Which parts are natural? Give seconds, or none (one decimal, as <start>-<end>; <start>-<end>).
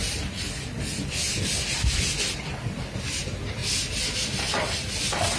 0.0-5.4